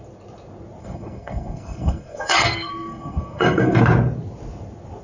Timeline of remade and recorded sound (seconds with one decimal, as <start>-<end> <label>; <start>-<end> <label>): 0.0-0.8 recorded; 0.8-3.8 remade; 3.8-5.0 recorded